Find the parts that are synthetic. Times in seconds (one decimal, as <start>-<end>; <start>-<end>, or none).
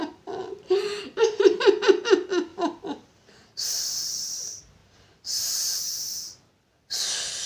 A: 0.0-1.0; 2.5-3.8; 4.8-6.5